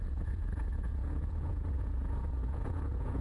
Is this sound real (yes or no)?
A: no